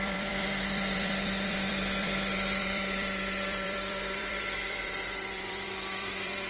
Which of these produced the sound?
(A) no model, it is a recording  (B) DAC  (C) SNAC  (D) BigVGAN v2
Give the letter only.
D